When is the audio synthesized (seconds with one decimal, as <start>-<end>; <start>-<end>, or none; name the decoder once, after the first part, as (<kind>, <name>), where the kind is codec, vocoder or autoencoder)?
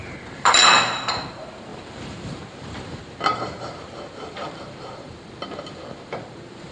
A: 0.0-6.7 (vocoder, BigVGAN v2)